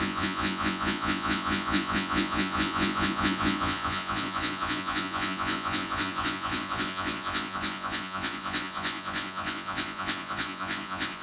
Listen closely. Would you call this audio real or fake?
fake